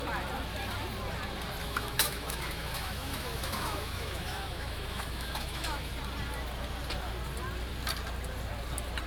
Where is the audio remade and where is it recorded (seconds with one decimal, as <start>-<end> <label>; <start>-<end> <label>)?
0.0-1.6 recorded; 1.6-5.9 remade; 5.9-9.1 recorded